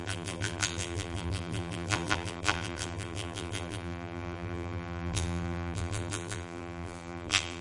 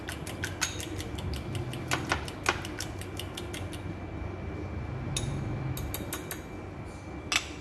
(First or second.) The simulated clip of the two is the first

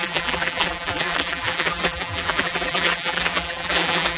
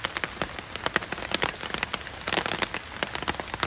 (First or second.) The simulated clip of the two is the first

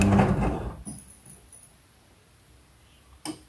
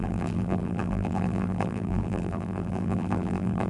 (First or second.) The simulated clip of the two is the second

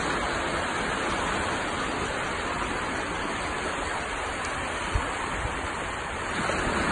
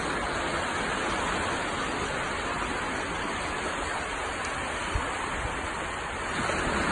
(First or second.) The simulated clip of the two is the first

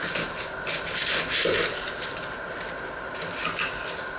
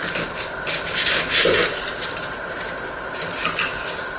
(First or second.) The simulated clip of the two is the second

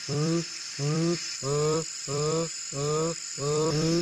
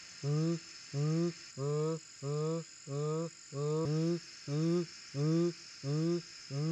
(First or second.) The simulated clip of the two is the first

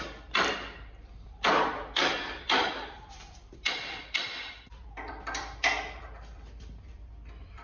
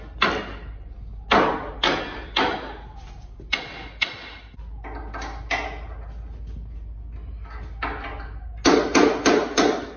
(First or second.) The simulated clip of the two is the first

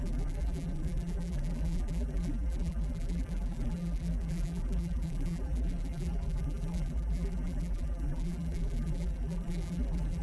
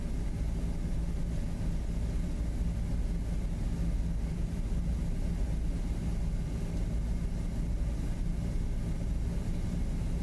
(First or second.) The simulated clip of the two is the first